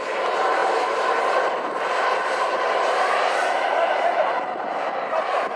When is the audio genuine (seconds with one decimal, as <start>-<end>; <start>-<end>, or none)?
0.0-0.6; 1.3-5.6